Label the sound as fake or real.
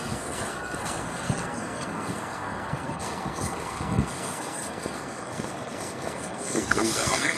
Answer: fake